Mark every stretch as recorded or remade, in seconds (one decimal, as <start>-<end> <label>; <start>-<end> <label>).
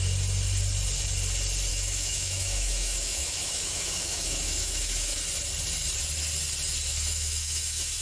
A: 0.0-1.7 recorded; 1.7-5.2 remade; 5.2-6.9 recorded; 6.9-8.0 remade